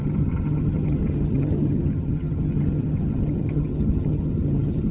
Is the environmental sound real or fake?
fake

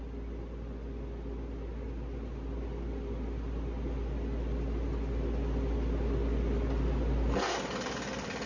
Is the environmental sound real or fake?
real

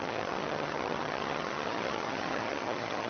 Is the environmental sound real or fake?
fake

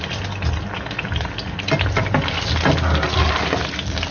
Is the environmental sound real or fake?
real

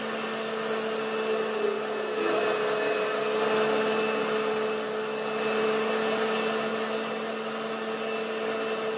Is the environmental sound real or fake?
real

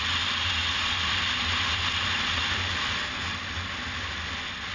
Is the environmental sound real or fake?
real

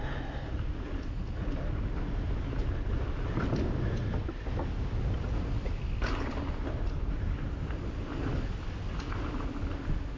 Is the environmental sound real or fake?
real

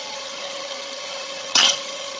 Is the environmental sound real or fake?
fake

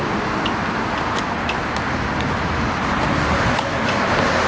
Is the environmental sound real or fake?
real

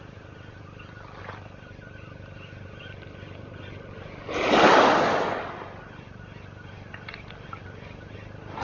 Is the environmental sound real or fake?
real